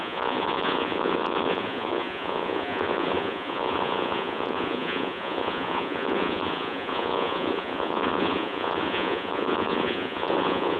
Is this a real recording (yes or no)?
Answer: no